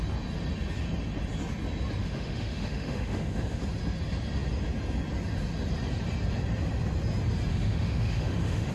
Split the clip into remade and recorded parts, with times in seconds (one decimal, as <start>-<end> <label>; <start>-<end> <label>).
0.0-2.0 recorded; 2.0-3.6 remade; 3.6-7.5 recorded; 7.5-8.7 remade